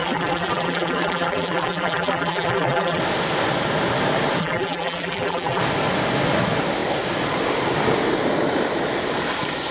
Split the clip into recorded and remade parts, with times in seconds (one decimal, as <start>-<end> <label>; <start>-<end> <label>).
0.0-3.0 remade; 3.0-4.4 recorded; 4.4-5.6 remade; 5.6-9.7 recorded